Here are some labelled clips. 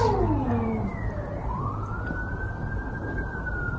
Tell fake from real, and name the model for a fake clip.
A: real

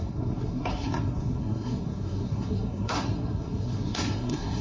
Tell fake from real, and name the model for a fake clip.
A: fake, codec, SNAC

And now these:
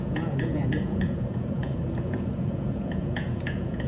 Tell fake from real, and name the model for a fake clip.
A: fake, vocoder, Vocos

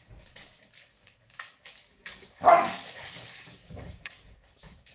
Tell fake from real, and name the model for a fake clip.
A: fake, codec, DAC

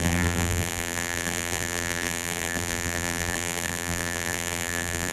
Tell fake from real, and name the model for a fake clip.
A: fake, vocoder, BigVGAN v2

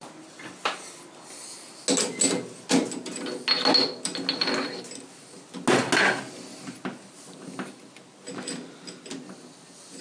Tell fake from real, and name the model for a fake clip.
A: real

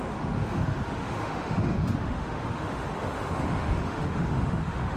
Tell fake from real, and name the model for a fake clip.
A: fake, autoencoder, DAC-VAE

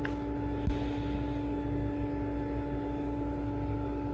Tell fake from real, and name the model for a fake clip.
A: real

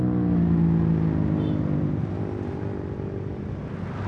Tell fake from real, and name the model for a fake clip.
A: real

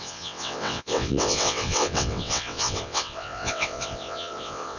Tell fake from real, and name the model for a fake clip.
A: fake, vocoder, WaveNeXt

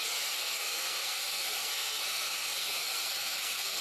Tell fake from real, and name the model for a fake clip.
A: fake, codec, SNAC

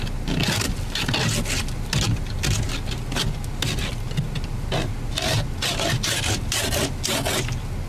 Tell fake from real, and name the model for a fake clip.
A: real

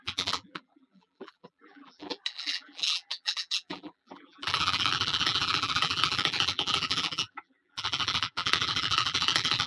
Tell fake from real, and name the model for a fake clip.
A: fake, vocoder, BigVGAN v2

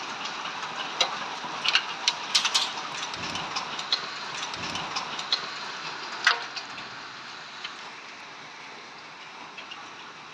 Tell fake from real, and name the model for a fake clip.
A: real